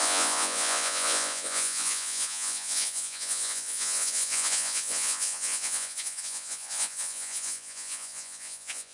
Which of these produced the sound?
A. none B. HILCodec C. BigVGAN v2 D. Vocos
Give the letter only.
D